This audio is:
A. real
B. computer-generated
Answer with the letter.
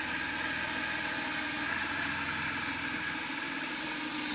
A